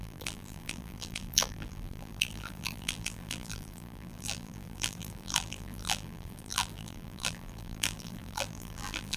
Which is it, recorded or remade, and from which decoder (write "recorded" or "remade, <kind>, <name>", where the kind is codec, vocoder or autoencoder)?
remade, vocoder, BigVGAN v2